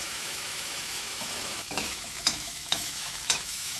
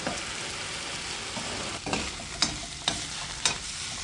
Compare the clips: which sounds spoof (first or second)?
first